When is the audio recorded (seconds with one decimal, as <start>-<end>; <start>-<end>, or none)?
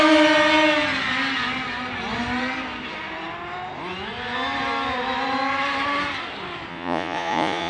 0.0-6.7